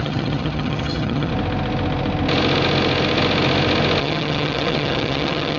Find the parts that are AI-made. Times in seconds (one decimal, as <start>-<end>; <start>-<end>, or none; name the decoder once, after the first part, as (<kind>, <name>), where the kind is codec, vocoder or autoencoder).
0.0-1.3 (vocoder, HiFi-GAN); 4.0-5.6